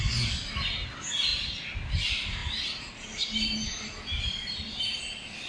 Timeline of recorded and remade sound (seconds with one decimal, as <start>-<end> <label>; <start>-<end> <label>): 0.0-5.5 recorded